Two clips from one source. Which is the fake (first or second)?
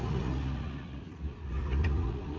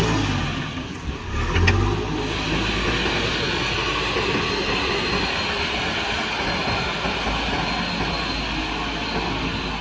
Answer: first